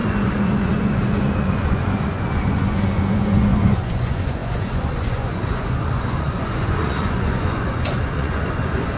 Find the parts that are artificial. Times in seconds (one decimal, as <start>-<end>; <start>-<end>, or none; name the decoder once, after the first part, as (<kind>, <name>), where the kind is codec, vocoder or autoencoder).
0.0-9.0 (vocoder, Vocos)